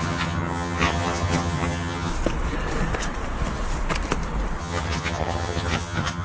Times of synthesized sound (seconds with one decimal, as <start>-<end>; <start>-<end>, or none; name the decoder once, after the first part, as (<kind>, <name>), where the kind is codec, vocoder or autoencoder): 0.0-2.1 (vocoder, HiFi-GAN); 4.6-6.2